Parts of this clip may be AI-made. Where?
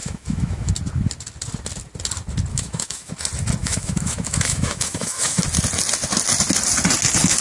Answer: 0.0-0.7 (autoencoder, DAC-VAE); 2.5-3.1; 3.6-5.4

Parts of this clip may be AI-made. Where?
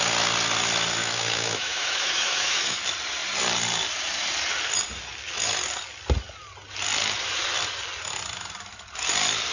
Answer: 1.0-2.8 (autoencoder, DAC-VAE)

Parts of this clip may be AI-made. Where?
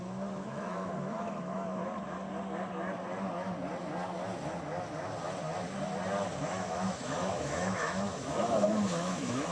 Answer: 0.0-1.8 (autoencoder, DAC-VAE); 6.4-9.5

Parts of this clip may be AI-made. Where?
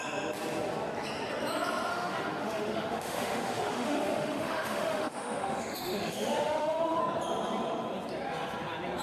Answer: 1.9-7.0 (autoencoder, DAC-VAE)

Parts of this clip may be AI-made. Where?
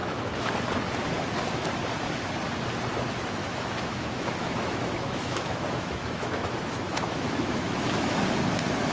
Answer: 0.0-0.5 (autoencoder, DAC-VAE); 3.4-8.2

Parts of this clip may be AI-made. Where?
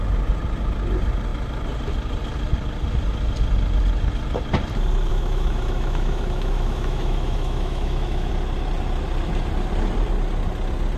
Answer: 5.1-8.3 (autoencoder, DAC-VAE)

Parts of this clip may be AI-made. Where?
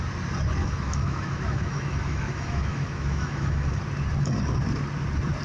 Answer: 0.6-3.8 (autoencoder, DAC-VAE)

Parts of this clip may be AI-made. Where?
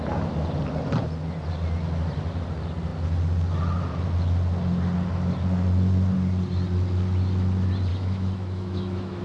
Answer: 7.9-9.2 (autoencoder, DAC-VAE)